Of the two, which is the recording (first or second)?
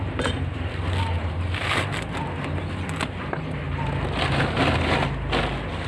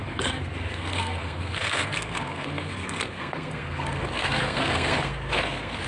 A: first